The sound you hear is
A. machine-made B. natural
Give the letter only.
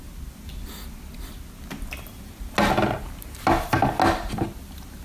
B